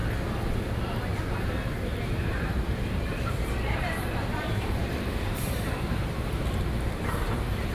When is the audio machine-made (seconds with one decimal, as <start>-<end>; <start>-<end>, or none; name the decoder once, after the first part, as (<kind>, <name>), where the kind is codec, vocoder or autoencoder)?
0.6-1.1 (vocoder, BigVGAN v2); 1.8-7.7